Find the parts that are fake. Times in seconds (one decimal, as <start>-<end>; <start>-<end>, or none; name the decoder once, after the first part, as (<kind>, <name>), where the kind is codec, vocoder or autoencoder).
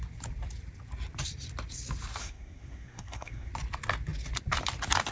2.2-3.5 (codec, SNAC)